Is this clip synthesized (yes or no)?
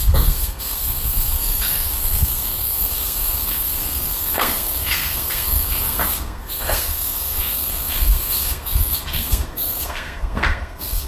yes